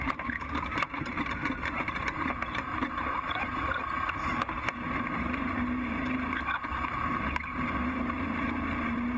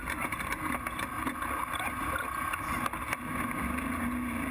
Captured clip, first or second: second